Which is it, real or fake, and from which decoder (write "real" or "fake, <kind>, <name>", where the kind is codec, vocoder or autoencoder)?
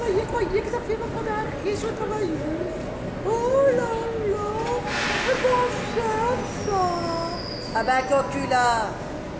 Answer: real